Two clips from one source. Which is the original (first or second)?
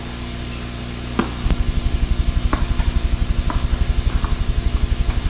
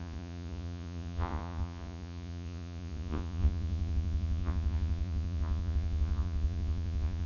first